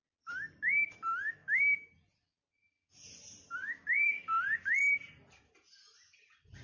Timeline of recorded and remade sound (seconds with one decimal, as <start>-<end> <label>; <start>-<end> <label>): 0.0-1.4 recorded; 1.4-1.9 remade; 1.9-6.6 recorded